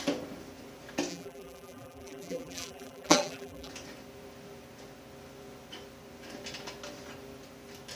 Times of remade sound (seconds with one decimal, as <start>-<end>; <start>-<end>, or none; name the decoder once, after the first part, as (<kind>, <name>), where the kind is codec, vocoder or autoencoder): 1.1-3.7 (vocoder, BigVGAN v2)